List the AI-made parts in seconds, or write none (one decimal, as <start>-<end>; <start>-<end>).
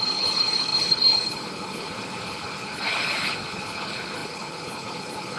0.0-5.4